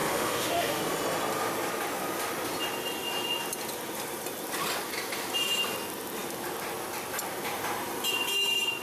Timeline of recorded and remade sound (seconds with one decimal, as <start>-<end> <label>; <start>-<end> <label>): 0.0-0.8 remade; 0.8-8.8 recorded